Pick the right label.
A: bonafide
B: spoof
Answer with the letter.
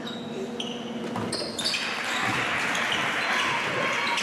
A